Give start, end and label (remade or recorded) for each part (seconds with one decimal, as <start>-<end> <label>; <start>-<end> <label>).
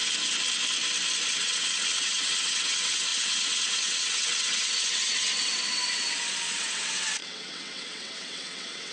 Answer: 0.0-1.3 recorded; 1.3-8.9 remade